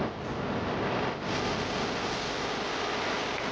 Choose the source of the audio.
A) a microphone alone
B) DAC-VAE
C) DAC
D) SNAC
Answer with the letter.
A